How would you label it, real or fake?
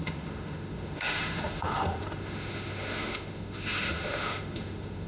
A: fake